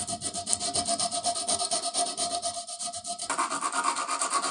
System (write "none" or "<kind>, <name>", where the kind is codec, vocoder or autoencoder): none